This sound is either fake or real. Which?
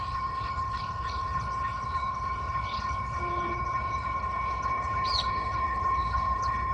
fake